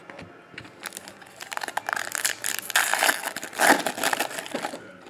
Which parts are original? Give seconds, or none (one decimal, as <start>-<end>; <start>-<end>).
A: 0.0-5.1